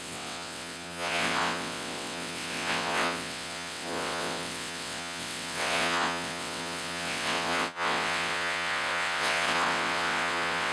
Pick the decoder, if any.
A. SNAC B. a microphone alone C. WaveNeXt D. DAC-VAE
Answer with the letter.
C